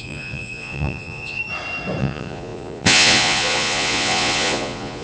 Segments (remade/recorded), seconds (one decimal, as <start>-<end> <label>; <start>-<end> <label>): 0.0-1.4 remade; 1.4-2.0 recorded; 2.0-5.0 remade